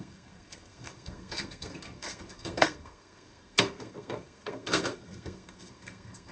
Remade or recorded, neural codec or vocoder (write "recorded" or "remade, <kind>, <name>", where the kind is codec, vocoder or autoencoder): remade, codec, SNAC